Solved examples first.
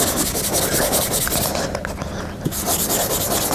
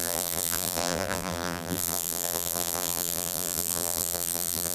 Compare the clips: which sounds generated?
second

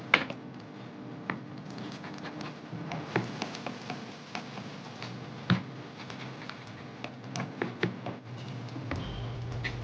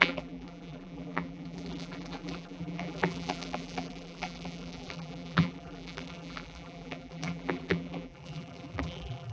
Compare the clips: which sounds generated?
second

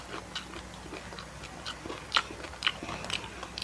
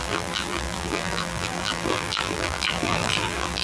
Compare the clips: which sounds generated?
second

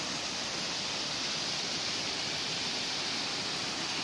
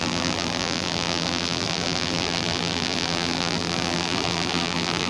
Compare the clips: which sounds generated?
second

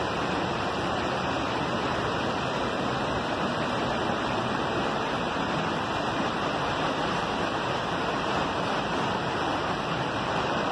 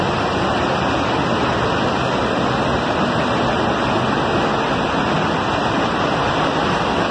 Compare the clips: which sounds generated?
first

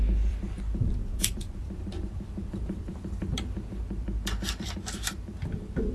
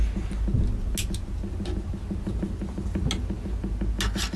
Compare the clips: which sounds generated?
first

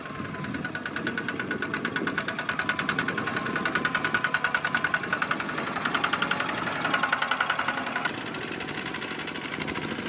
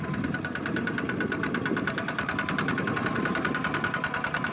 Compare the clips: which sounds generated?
second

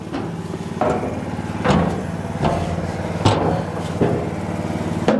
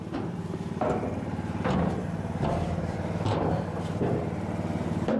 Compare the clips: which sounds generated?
second